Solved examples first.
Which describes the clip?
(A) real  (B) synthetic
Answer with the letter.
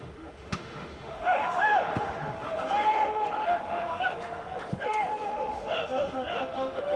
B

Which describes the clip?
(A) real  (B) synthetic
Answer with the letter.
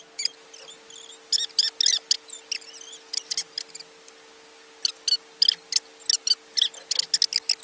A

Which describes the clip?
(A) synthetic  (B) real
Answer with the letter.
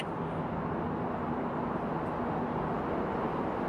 B